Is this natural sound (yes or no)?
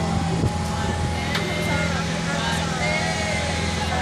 yes